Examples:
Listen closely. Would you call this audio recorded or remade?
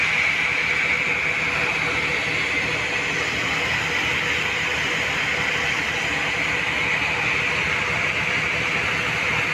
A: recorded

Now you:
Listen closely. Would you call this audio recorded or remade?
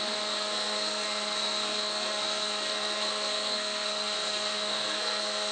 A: remade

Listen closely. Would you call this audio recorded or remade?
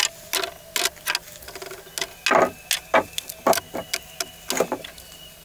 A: recorded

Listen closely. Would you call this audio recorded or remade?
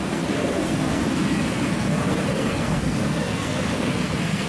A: remade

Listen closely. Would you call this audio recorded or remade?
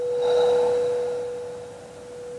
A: recorded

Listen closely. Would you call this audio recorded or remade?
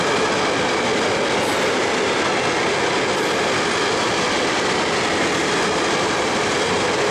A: recorded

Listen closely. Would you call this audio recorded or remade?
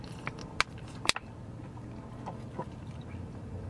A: recorded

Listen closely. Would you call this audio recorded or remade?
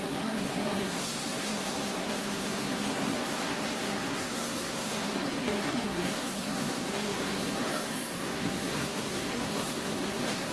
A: remade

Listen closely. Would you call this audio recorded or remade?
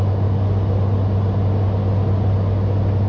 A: recorded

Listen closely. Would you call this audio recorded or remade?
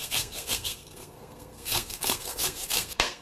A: remade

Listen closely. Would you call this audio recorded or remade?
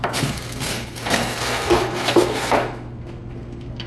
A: remade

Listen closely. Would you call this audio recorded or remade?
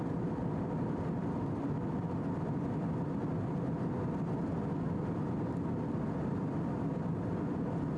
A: recorded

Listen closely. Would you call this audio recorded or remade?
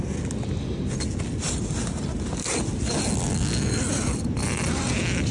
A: recorded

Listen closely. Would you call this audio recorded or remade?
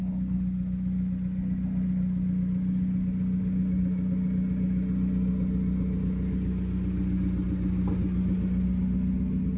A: recorded